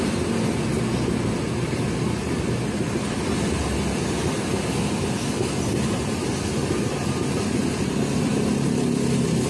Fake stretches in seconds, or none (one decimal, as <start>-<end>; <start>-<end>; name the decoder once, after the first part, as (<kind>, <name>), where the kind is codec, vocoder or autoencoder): none